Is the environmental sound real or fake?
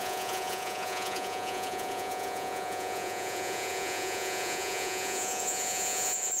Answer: fake